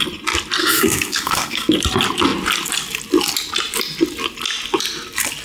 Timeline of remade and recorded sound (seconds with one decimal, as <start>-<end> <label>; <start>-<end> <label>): 0.0-0.6 recorded; 0.6-1.7 remade; 1.7-5.4 recorded